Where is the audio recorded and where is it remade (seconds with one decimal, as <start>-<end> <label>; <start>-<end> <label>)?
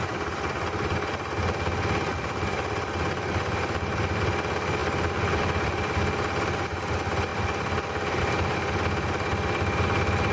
0.0-10.3 recorded